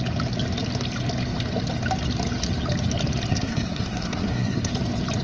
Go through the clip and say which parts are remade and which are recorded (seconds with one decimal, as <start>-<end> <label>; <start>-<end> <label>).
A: 0.0-3.3 recorded; 3.3-4.7 remade; 4.7-5.2 recorded